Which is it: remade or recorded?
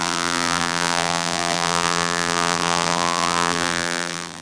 remade